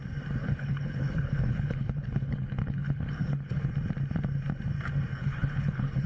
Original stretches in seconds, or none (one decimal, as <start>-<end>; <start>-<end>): 0.0-0.4; 3.7-5.1